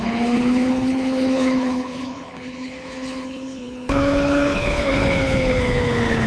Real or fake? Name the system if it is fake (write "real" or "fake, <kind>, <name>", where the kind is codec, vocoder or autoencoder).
fake, codec, HILCodec